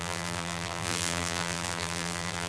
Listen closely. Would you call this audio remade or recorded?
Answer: remade